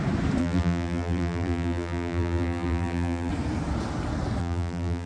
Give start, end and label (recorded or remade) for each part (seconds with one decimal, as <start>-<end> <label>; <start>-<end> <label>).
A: 0.0-0.4 recorded; 0.4-3.3 remade; 3.3-4.4 recorded; 4.4-5.1 remade

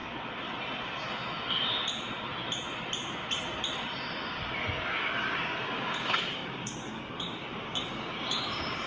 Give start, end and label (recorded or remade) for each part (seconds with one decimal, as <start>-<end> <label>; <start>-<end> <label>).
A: 0.0-4.8 recorded; 4.8-8.9 remade

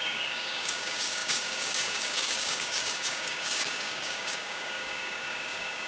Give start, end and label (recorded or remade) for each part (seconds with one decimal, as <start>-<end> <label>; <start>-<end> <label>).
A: 0.0-5.9 remade